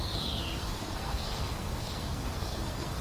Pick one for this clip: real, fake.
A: fake